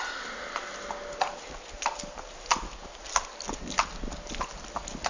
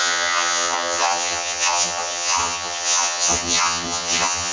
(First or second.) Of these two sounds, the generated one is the second